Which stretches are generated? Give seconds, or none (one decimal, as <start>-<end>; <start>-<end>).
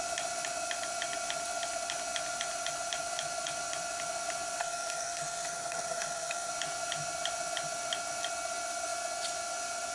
4.6-6.5